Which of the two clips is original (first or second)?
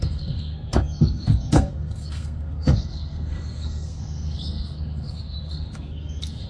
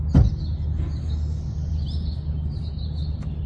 second